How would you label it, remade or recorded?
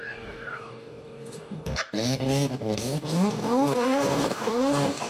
remade